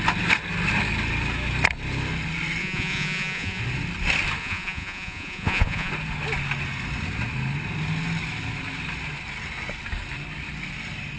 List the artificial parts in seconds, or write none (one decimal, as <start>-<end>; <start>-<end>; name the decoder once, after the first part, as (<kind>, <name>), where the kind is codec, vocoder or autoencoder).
2.6-3.6 (vocoder, Vocos); 4.4-5.9